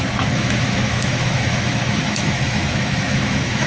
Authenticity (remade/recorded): remade